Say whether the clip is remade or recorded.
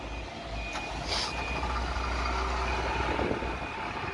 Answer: recorded